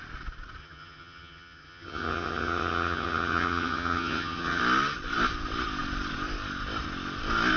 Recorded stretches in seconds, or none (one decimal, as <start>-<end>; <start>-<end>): 0.0-0.6; 4.6-7.6